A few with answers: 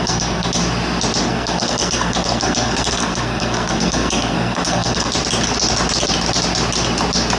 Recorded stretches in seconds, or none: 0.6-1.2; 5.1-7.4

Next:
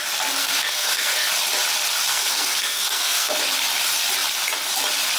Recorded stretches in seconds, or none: 0.0-0.4; 1.3-2.1; 3.4-5.2